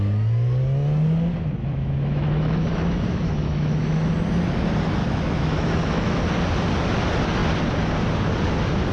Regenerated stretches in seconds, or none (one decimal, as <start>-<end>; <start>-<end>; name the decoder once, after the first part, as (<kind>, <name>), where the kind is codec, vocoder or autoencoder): 1.6-4.1 (autoencoder, DAC-VAE); 5.0-6.2